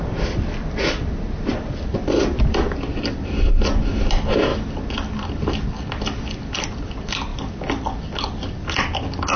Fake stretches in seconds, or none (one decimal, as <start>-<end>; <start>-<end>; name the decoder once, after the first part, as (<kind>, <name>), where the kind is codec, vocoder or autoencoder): none